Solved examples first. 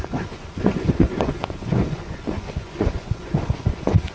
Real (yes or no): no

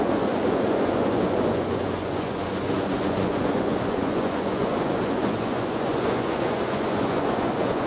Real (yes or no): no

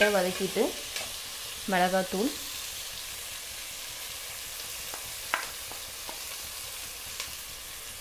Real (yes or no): yes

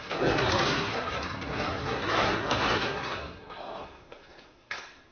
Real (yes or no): no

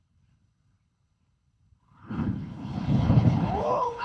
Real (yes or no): no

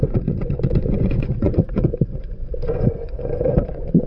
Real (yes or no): no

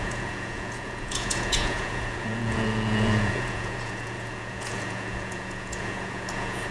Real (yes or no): no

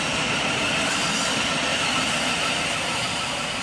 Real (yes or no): no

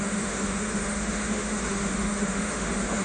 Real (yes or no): no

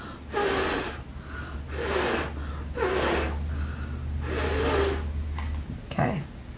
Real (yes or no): yes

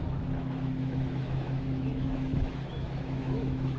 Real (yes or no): no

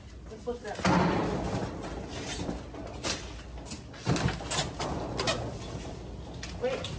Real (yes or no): yes